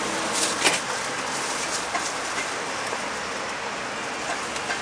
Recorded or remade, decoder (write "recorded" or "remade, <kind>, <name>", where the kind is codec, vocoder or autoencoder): recorded